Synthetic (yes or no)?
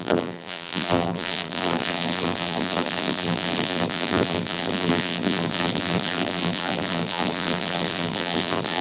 yes